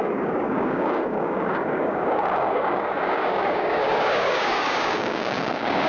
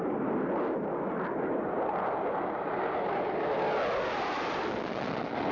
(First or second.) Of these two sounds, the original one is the second